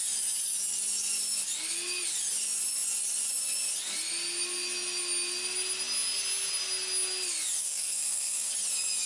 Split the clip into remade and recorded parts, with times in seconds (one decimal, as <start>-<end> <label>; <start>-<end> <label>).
0.0-7.6 recorded; 7.6-8.5 remade; 8.5-9.1 recorded